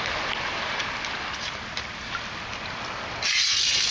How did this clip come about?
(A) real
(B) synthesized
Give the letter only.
A